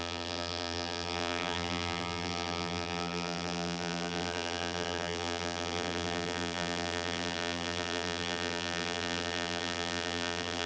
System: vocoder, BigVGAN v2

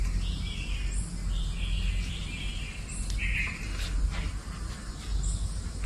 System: none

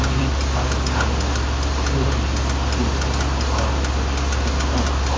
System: none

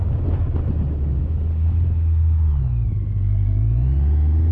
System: none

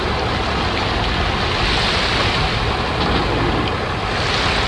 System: none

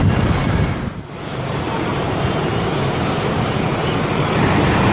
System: vocoder, BigVGAN v2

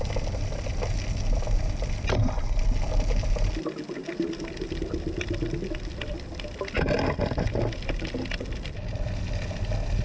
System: none